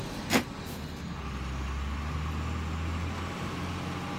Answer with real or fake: real